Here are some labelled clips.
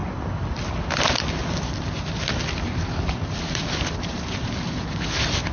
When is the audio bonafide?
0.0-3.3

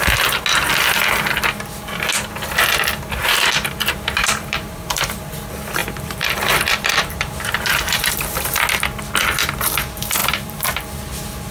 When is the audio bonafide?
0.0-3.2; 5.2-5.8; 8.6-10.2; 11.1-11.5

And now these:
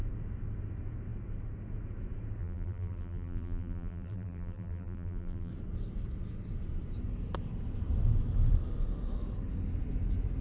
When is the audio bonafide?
0.0-2.4; 5.5-10.4

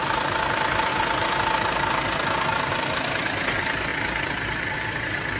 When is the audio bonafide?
0.9-2.7

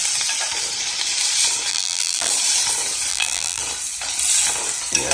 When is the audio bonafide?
0.0-1.7; 2.3-3.1; 3.6-5.1

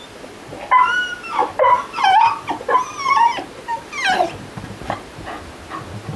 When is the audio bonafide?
0.0-1.4; 5.0-6.2

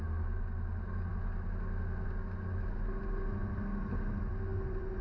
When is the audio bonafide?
0.0-5.0

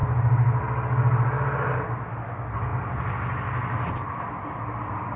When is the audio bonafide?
0.0-5.2